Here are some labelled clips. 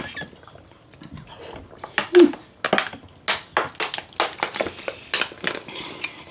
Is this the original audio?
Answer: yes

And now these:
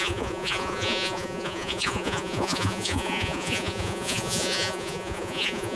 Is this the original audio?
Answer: no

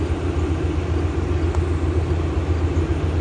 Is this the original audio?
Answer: yes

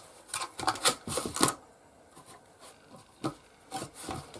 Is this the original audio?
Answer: yes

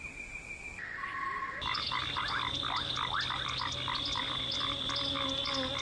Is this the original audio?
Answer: yes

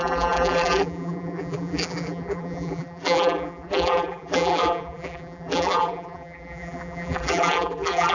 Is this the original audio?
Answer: no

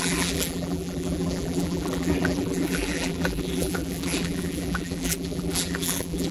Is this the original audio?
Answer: no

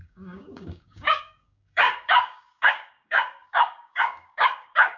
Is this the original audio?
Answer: no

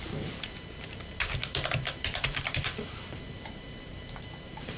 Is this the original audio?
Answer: no